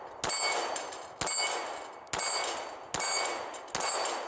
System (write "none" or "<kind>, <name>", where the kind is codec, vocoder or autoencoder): none